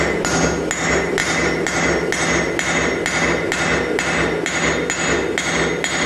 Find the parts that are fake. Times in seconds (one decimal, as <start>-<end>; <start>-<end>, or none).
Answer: none

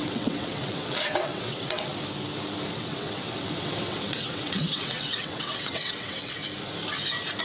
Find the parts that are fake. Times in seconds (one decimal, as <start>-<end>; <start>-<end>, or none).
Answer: 0.0-1.9; 2.7-6.4

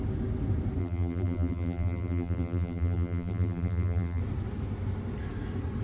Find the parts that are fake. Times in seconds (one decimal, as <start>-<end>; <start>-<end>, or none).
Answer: 0.8-4.2